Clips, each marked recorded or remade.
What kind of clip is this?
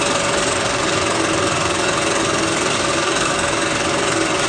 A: remade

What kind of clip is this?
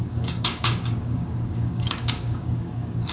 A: remade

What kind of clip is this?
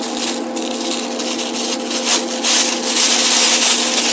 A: recorded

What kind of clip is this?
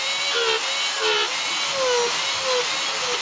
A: recorded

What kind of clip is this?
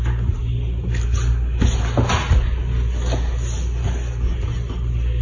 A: recorded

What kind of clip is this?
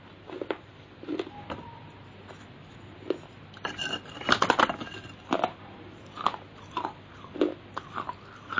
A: recorded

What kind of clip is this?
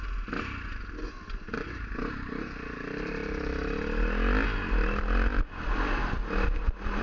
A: recorded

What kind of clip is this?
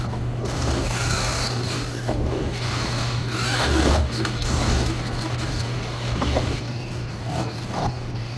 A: remade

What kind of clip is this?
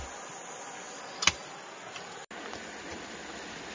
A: recorded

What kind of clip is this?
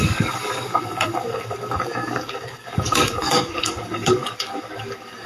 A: remade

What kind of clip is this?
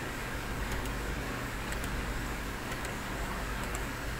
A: remade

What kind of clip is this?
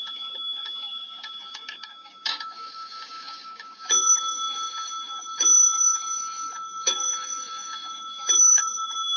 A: remade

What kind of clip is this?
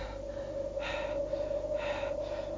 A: recorded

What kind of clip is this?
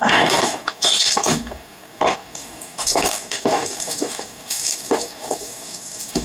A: remade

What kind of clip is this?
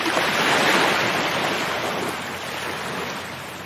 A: recorded